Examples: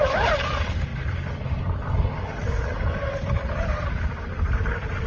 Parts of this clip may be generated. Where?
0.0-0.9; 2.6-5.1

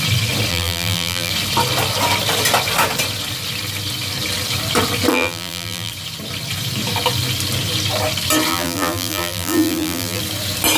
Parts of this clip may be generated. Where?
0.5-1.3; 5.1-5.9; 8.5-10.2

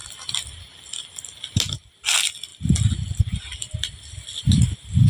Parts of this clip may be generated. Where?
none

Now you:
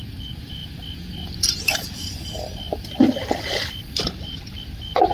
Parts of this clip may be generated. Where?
0.0-0.6; 3.7-5.1

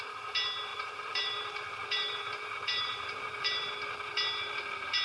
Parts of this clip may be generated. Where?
0.7-3.7

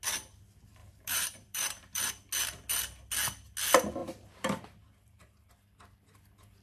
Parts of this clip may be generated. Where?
0.8-2.1; 4.0-5.5

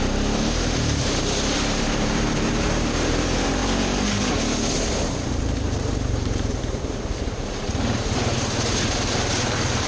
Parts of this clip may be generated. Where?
0.0-3.6; 5.3-9.9

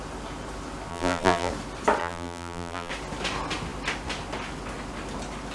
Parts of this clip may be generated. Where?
0.9-1.5; 2.0-2.9